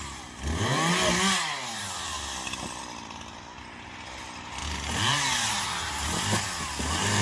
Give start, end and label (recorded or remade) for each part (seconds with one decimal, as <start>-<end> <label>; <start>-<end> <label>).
0.0-7.2 recorded